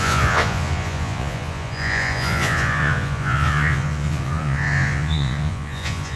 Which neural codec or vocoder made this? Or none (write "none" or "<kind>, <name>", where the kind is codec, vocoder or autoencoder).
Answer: vocoder, Vocos